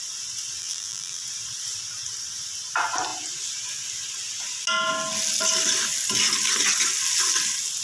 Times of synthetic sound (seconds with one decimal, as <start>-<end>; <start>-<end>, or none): 0.6-1.2